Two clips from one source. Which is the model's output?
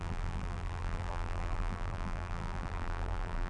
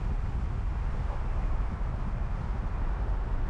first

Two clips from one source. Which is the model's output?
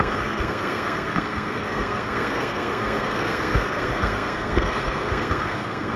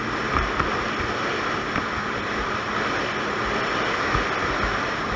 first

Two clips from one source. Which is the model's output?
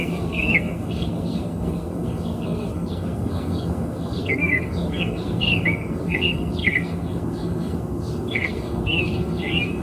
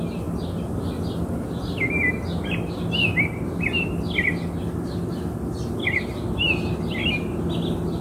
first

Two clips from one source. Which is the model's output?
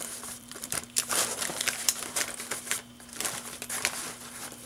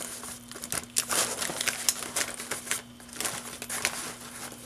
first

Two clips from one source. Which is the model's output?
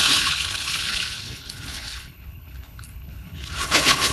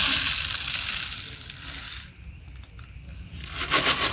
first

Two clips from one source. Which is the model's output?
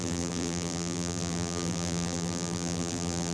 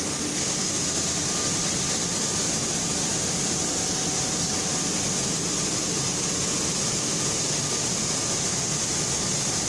first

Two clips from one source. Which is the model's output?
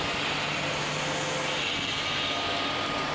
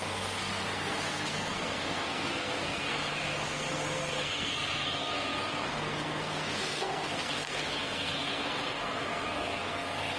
second